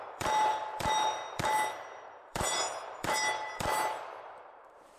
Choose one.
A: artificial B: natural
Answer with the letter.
A